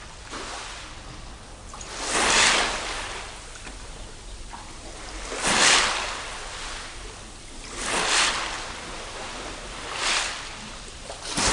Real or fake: real